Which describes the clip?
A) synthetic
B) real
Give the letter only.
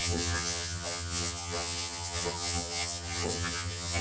A